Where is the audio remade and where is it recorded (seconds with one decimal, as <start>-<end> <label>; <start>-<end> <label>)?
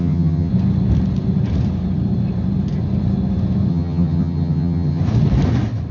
0.0-0.5 remade; 0.5-3.7 recorded; 3.7-5.0 remade; 5.0-5.9 recorded